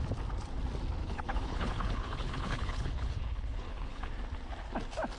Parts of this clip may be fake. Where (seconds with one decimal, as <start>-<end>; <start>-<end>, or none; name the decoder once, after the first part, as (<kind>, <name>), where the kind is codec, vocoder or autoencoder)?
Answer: 1.0-4.1 (codec, HILCodec)